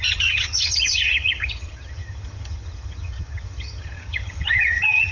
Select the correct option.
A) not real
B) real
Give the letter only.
A